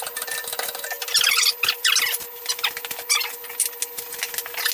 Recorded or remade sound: recorded